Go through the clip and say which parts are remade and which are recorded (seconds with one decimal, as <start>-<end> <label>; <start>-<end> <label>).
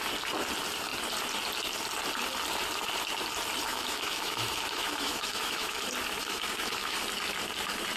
0.0-3.7 recorded; 3.7-5.8 remade; 5.8-6.2 recorded; 6.2-7.0 remade; 7.0-8.0 recorded